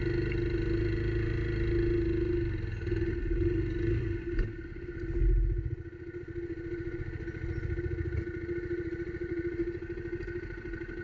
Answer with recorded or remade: recorded